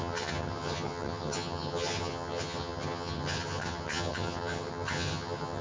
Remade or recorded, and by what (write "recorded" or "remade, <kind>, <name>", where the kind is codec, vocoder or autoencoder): remade, vocoder, HiFi-GAN